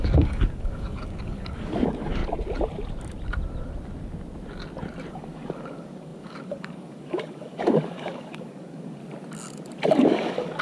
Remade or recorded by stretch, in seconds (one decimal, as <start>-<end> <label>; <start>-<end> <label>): 0.0-2.2 remade; 2.2-5.1 recorded; 5.1-9.0 remade; 9.0-9.9 recorded; 9.9-10.6 remade